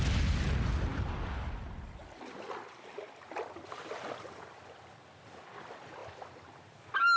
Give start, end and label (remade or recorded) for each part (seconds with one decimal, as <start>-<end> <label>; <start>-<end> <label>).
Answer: 0.0-7.2 recorded